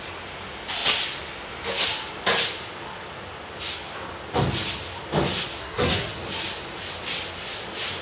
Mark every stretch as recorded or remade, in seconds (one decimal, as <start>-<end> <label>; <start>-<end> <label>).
0.0-5.6 recorded; 5.6-6.1 remade; 6.1-8.0 recorded